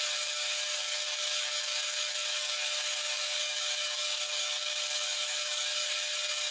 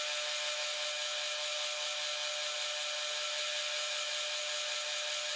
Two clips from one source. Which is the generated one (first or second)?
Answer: first